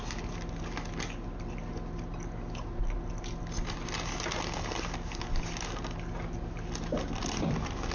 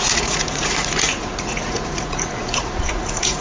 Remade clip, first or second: second